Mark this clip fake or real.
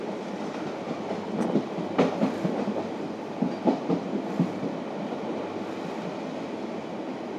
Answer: real